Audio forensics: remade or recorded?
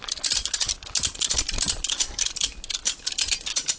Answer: recorded